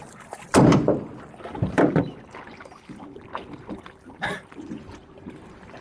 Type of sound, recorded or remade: remade